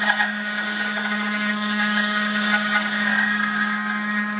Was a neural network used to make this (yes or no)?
yes